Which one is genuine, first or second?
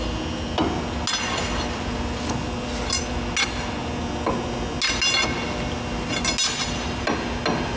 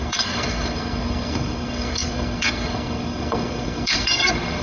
first